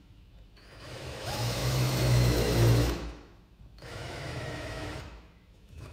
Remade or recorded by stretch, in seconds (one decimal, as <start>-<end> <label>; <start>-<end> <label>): 0.0-5.9 remade